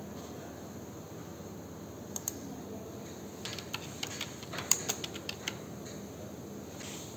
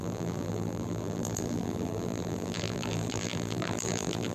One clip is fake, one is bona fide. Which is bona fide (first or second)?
first